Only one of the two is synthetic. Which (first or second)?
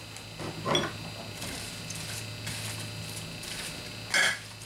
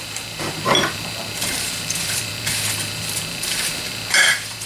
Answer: second